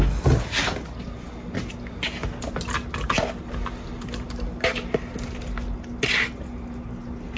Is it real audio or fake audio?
real